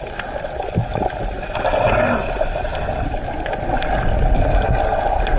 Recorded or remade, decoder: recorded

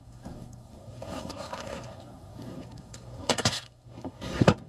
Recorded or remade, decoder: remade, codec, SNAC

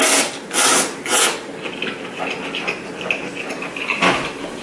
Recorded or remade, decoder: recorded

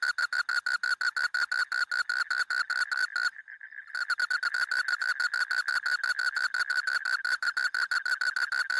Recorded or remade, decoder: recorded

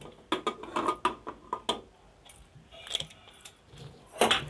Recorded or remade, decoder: recorded